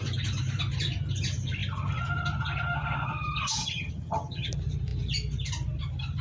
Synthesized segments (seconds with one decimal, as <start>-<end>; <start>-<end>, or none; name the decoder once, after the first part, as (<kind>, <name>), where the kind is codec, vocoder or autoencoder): 3.6-4.5 (vocoder, HiFi-GAN)